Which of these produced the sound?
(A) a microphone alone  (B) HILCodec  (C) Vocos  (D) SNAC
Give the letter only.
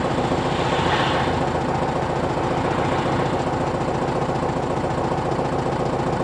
A